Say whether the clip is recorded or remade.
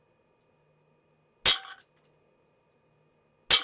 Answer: recorded